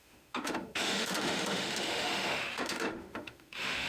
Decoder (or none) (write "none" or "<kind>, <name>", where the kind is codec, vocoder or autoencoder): autoencoder, DAC-VAE